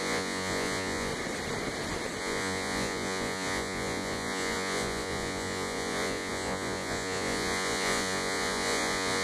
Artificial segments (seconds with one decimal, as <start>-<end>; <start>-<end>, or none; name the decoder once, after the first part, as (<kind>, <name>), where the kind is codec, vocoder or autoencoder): 0.0-1.1 (vocoder, Vocos); 2.2-9.2